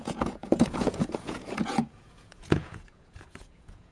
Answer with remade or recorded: remade